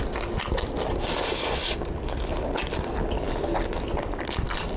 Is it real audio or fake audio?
real